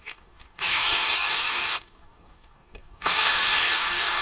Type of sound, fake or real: fake